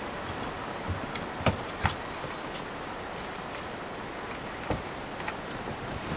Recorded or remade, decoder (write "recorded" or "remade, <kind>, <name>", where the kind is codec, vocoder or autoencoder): recorded